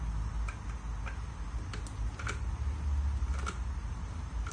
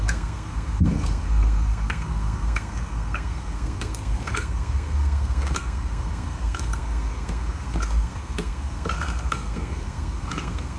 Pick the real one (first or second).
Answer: first